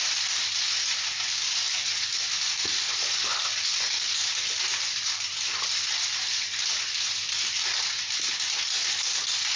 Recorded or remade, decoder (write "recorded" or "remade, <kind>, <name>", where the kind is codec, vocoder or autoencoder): recorded